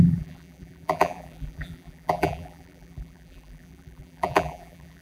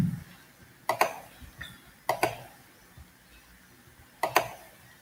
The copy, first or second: first